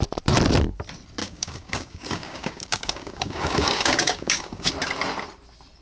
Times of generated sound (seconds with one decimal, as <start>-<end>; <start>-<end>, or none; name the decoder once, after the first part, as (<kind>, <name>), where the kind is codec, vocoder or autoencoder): 1.2-4.7 (codec, DAC)